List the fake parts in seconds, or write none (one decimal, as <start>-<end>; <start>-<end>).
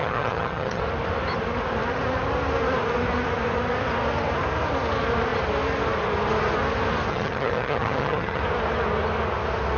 0.0-0.8; 7.1-8.4